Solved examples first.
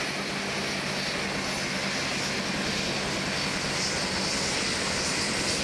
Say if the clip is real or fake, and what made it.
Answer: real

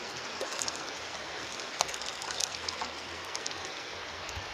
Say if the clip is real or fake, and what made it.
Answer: fake, codec, SNAC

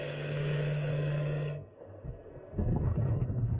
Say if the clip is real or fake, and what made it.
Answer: fake, codec, SNAC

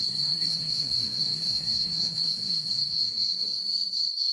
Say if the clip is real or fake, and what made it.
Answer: fake, codec, SNAC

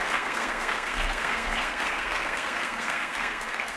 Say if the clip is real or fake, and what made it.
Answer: fake, codec, SNAC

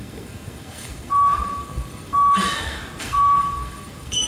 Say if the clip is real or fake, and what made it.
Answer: fake, codec, SNAC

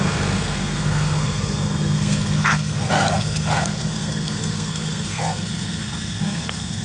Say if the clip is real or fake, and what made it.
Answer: fake, codec, SNAC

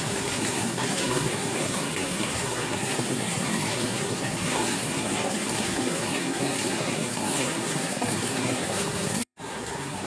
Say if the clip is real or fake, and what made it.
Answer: fake, codec, SNAC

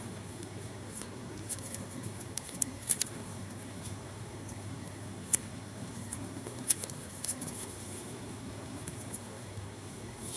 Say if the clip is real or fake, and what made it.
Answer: fake, codec, SNAC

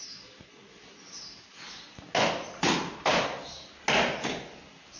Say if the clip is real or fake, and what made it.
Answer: real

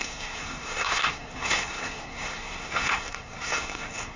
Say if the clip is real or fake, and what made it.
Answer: fake, codec, SNAC